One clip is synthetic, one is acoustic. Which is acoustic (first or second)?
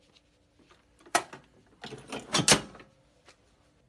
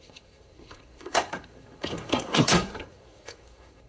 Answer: first